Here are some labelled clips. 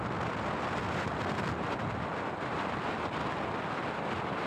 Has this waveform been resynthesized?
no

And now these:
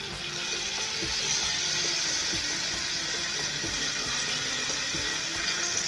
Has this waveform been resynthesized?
no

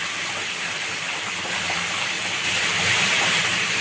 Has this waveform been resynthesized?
yes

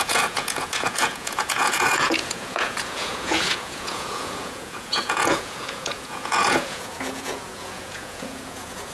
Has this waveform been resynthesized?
yes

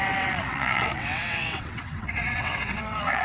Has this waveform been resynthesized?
yes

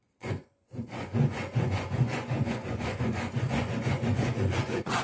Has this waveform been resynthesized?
yes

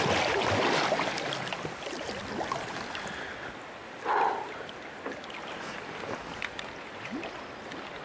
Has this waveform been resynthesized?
no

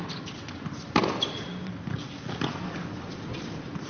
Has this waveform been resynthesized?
yes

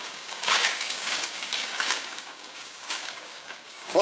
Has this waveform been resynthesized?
yes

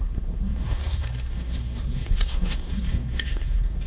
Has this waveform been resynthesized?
yes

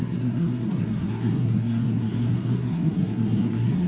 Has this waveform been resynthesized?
yes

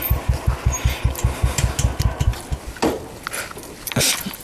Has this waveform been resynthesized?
no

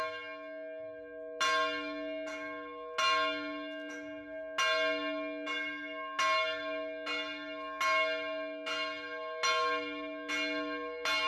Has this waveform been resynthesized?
no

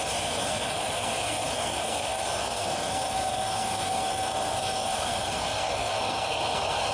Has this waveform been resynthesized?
yes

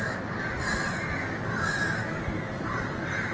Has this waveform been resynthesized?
no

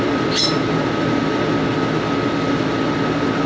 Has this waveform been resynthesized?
no